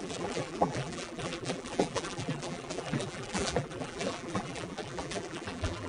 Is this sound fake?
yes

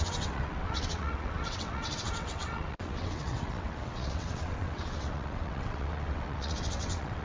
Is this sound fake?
yes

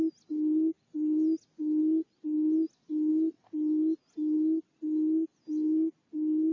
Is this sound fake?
no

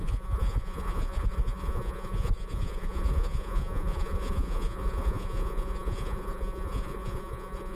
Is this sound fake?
yes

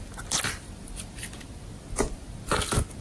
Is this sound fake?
no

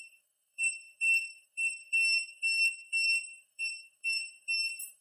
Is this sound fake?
yes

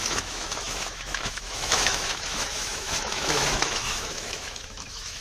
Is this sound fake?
yes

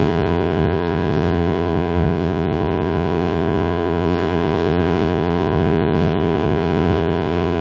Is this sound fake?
yes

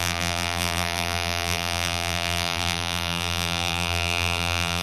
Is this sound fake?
yes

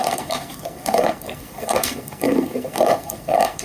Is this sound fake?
yes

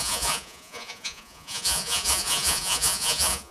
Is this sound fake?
yes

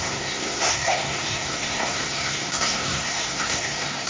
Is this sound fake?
yes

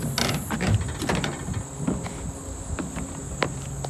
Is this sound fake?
no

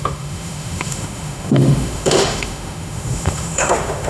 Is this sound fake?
yes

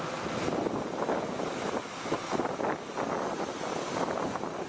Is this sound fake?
no